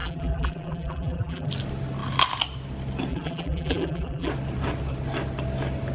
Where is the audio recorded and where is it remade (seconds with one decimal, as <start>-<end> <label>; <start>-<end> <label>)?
0.0-1.5 remade; 1.5-3.1 recorded; 3.1-4.3 remade; 4.3-5.9 recorded